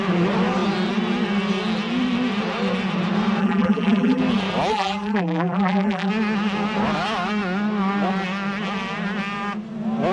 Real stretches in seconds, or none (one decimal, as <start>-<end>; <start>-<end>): 0.0-3.4; 4.2-4.7; 6.1-10.1